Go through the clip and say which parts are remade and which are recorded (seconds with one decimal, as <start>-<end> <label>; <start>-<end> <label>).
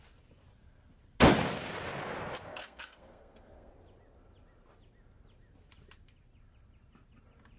0.0-2.5 recorded; 2.5-3.7 remade; 3.7-7.6 recorded